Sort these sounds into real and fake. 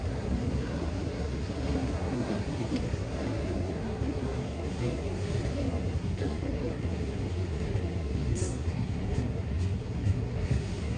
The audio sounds fake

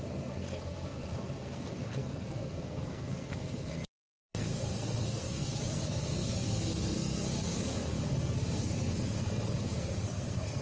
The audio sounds fake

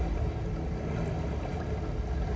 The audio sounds real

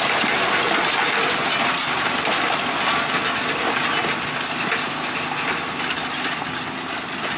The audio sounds real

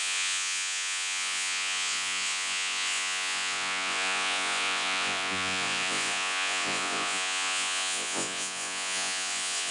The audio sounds fake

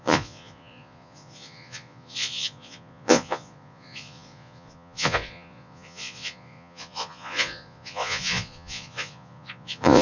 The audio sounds fake